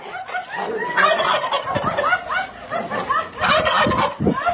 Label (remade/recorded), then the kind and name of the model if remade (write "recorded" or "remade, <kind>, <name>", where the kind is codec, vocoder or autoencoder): recorded